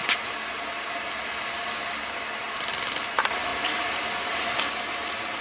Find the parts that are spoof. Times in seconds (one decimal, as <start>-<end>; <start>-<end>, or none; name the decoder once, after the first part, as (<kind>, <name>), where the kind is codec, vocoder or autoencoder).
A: 3.5-4.4 (vocoder, BigVGAN v2)